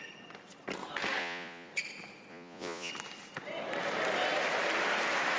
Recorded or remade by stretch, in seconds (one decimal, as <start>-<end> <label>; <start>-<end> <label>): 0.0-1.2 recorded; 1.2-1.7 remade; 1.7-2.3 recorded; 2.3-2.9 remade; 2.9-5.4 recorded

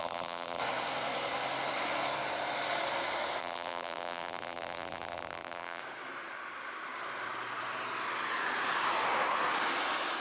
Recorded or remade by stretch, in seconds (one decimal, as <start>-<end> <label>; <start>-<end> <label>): 0.0-0.6 remade; 0.6-3.4 recorded; 3.4-5.8 remade; 5.8-10.2 recorded

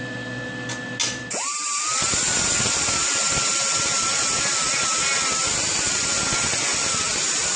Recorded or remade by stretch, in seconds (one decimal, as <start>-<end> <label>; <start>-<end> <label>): 0.0-7.6 recorded

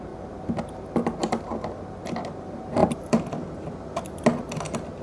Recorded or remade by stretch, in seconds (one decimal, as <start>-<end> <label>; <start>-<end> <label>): 0.0-1.2 recorded; 1.2-1.8 remade; 1.8-2.8 recorded; 2.8-3.4 remade; 3.4-5.0 recorded

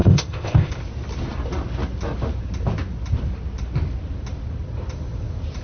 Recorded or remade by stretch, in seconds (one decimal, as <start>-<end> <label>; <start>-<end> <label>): 0.0-0.7 remade; 0.7-5.6 recorded